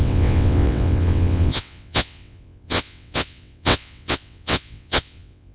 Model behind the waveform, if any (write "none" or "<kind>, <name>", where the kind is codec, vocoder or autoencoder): vocoder, WaveNeXt